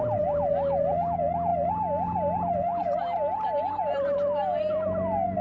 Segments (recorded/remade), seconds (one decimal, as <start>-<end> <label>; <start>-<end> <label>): 0.0-5.4 recorded